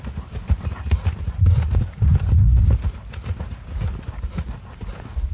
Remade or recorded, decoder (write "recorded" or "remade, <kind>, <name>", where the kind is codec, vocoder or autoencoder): recorded